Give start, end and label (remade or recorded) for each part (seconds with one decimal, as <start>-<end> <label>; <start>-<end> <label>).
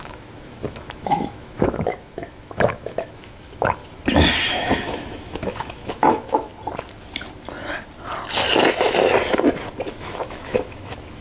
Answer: 0.0-3.8 remade; 3.8-4.5 recorded; 4.5-6.5 remade; 6.5-9.9 recorded; 9.9-11.2 remade